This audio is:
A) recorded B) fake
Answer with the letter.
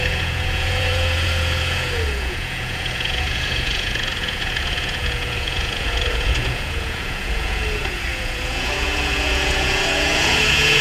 B